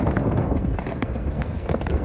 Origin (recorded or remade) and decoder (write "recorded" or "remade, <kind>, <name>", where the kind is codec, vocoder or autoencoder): remade, codec, SNAC